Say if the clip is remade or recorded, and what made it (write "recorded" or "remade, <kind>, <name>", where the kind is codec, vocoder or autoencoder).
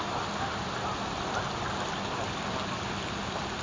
recorded